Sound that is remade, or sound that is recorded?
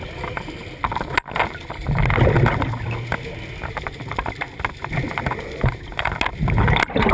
recorded